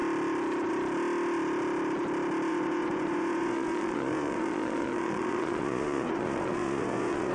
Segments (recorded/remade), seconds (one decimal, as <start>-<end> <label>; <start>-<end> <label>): 0.0-2.5 recorded; 2.5-7.3 remade